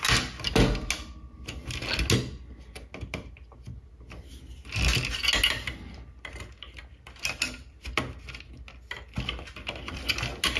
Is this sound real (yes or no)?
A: yes